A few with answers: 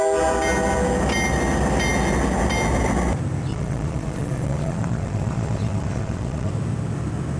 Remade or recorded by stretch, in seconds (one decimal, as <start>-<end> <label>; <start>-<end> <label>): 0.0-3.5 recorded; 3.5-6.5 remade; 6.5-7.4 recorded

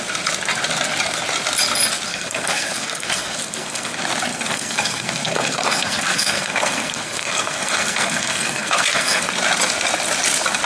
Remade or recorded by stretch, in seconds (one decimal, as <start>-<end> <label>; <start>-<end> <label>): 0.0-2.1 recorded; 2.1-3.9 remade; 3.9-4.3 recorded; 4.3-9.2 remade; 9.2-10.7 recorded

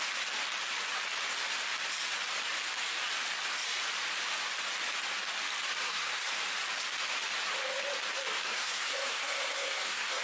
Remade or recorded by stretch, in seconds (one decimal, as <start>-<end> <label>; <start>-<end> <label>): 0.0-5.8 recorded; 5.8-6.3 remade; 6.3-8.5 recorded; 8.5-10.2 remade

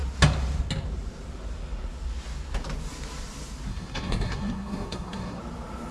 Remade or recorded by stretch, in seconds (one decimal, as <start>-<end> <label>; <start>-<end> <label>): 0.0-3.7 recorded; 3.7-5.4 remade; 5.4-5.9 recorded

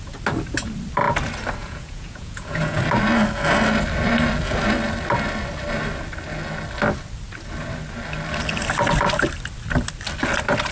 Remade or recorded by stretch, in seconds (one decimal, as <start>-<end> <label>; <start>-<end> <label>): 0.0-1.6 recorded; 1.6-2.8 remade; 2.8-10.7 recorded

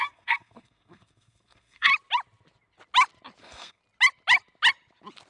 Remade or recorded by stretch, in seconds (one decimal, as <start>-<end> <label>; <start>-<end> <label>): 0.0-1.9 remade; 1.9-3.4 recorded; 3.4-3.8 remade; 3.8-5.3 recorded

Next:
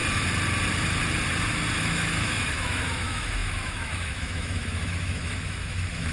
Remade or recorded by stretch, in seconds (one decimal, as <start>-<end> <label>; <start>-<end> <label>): 0.0-1.8 recorded; 1.8-6.1 remade